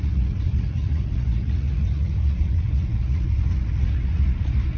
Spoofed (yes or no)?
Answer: yes